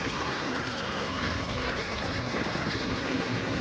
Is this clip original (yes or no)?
no